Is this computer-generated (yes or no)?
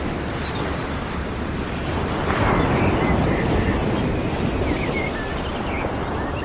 no